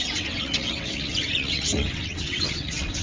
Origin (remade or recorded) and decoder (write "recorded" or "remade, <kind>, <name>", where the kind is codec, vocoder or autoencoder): remade, vocoder, WaveNeXt